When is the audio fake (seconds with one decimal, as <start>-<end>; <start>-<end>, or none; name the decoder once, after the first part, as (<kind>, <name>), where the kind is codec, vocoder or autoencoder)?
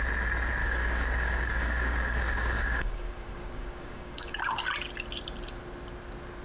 0.6-4.4 (codec, DAC)